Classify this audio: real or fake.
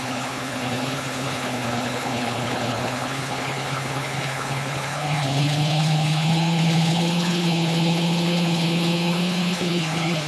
fake